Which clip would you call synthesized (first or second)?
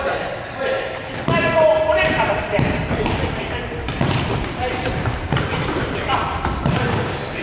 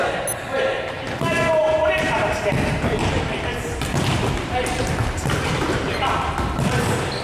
first